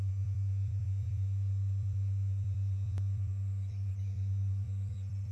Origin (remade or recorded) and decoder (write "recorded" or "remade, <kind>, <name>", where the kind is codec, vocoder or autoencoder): remade, vocoder, BigVGAN v2